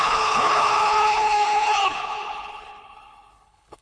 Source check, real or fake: fake